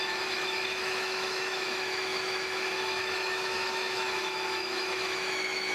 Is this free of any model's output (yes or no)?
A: no